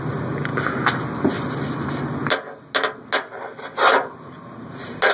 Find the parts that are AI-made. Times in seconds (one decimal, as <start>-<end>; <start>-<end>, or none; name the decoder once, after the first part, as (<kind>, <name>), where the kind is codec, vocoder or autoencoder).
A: none